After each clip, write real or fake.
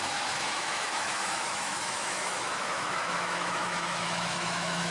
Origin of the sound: fake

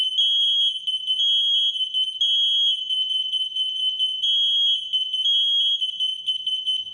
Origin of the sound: real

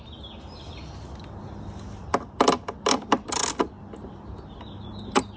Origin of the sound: real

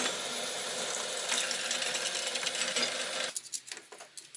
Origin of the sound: real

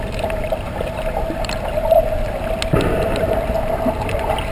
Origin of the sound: real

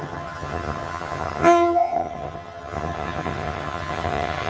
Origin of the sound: fake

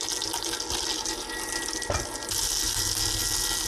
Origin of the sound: real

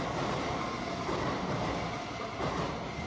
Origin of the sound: real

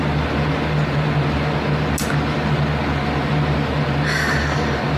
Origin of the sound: real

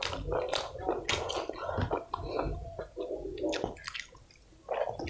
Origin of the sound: real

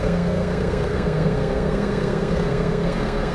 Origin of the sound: fake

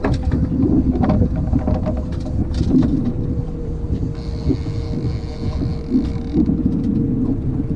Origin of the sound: real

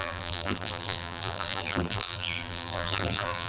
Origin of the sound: fake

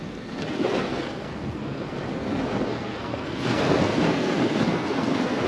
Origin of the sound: fake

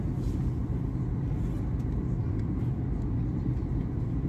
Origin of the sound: real